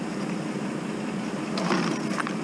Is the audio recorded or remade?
recorded